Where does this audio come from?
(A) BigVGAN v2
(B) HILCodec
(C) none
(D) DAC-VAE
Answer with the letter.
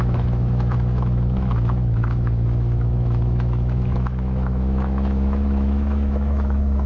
D